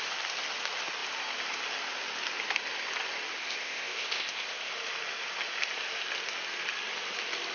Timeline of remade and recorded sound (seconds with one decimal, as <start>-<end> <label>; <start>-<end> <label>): 0.0-3.4 recorded; 3.4-4.7 remade; 4.7-7.5 recorded